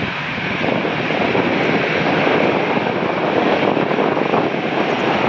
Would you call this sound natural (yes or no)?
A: yes